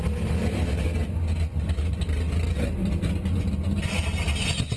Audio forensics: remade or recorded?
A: recorded